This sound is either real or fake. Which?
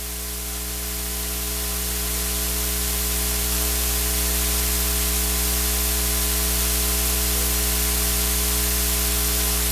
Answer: real